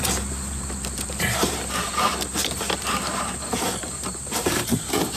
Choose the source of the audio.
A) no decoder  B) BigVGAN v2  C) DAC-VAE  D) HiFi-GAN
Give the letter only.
B